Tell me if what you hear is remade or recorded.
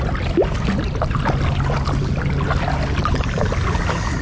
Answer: recorded